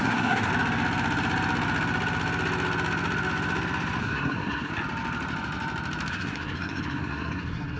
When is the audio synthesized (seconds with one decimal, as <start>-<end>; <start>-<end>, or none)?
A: 0.0-0.5; 4.0-4.7; 6.1-7.8